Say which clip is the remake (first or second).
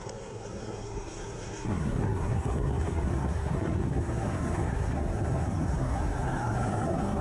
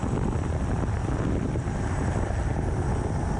first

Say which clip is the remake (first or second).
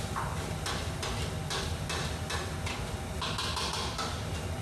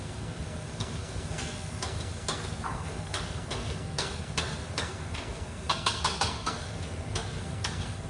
second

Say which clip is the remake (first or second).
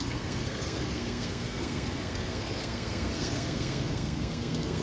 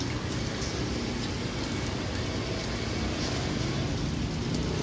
first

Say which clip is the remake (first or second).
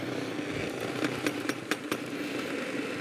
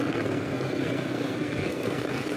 second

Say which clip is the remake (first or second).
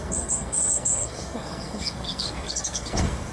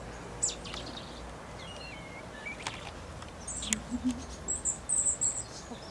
first